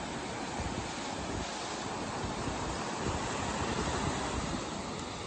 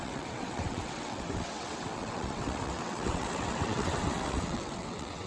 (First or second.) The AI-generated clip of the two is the second